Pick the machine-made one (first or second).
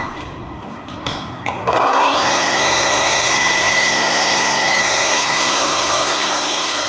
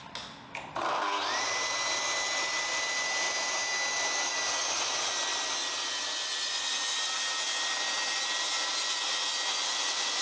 first